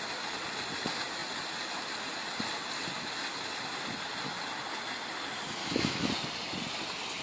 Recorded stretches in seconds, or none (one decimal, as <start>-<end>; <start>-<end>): 0.0-5.6; 6.1-7.2